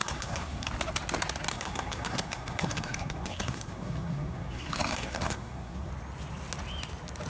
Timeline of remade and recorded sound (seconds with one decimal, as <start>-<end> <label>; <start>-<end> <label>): 0.0-0.7 remade; 0.7-1.5 recorded; 1.5-5.9 remade; 5.9-7.3 recorded